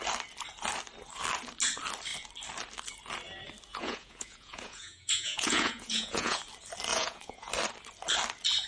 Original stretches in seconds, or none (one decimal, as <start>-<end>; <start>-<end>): 0.0-3.7; 6.4-6.9; 7.5-8.7